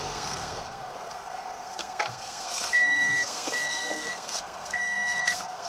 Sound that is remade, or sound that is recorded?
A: remade